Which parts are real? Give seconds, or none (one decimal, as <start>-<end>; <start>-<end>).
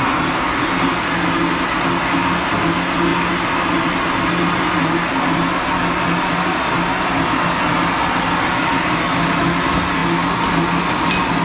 0.0-11.4